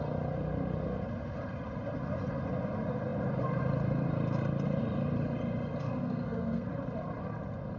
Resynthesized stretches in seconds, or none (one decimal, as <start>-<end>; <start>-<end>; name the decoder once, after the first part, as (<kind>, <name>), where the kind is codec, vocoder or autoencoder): 6.0-6.7 (codec, SNAC)